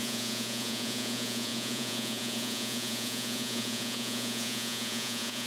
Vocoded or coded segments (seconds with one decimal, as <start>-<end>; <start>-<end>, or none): 0.0-5.5

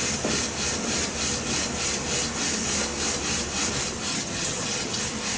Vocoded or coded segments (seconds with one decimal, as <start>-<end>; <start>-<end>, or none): 4.1-5.0

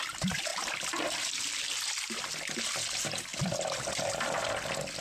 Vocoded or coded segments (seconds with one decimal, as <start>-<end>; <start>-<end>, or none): 3.3-4.1

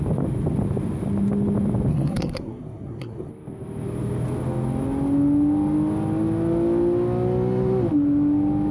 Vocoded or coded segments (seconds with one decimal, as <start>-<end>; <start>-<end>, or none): 1.9-3.3

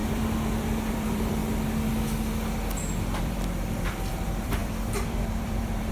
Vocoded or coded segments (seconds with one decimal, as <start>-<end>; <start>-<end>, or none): 0.0-1.4; 3.2-5.9